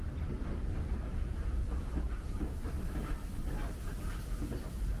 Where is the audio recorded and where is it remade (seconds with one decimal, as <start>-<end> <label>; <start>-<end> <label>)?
0.0-1.1 recorded; 1.1-1.9 remade; 1.9-5.0 recorded